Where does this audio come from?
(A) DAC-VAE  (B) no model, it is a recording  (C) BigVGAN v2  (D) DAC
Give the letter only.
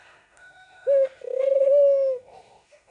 A